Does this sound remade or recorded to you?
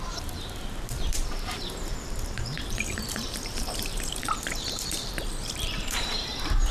remade